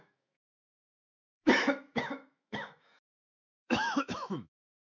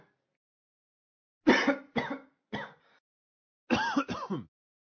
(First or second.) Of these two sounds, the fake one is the first